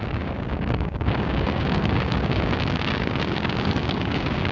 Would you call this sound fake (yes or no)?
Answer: yes